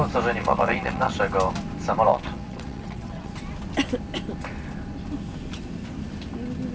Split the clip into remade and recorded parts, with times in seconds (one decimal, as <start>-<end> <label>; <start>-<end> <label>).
0.0-0.4 recorded; 0.4-1.2 remade; 1.2-2.1 recorded; 2.1-3.3 remade; 3.3-6.7 recorded